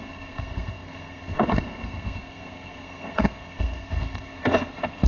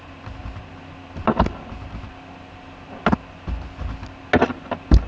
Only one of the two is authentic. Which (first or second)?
second